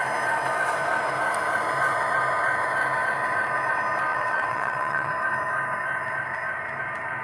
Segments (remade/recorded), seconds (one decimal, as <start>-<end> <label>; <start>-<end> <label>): 0.0-4.1 recorded; 4.1-5.1 remade; 5.1-7.2 recorded